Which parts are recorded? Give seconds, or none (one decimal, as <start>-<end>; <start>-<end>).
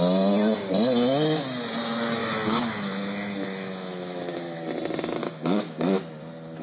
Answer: 0.0-2.2; 4.7-5.2; 6.0-6.6